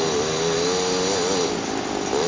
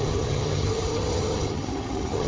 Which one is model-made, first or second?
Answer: second